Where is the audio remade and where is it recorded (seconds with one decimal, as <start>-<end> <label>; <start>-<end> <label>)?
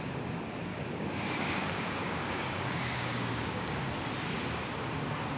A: 0.0-0.7 recorded; 0.7-3.9 remade; 3.9-5.4 recorded